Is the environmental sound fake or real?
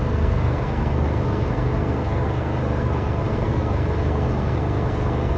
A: fake